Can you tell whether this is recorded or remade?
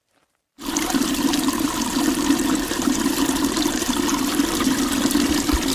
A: remade